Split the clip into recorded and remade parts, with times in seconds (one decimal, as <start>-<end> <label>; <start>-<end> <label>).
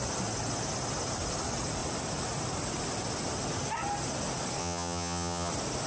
0.0-4.6 recorded; 4.6-5.5 remade; 5.5-5.9 recorded